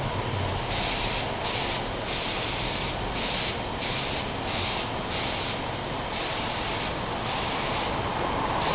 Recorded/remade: recorded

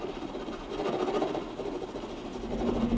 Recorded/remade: recorded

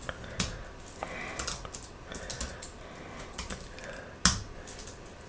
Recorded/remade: recorded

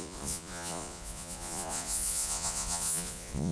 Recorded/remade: remade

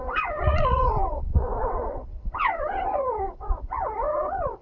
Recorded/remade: remade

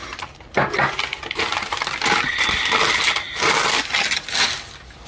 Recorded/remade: recorded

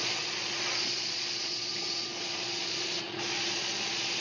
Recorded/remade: remade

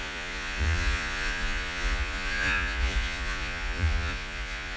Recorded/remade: remade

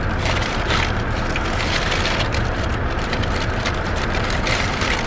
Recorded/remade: remade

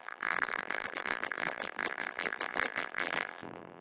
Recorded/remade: remade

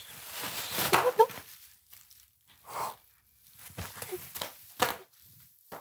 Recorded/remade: remade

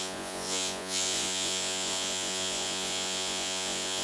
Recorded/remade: remade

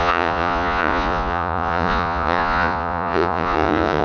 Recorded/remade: remade